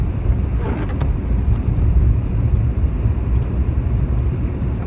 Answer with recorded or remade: recorded